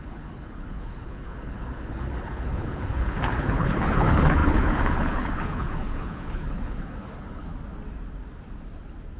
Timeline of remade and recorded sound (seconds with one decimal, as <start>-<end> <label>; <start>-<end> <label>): 0.0-7.5 remade; 7.5-9.2 recorded

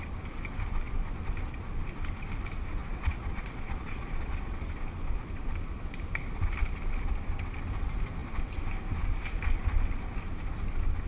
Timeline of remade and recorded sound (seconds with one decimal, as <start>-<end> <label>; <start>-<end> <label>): 0.0-2.8 recorded; 2.8-4.7 remade; 4.7-11.1 recorded